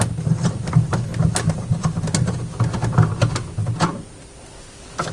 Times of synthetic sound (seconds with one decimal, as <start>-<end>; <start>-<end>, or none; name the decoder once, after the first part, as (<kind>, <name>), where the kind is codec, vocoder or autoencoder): none